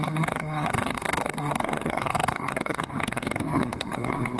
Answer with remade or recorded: remade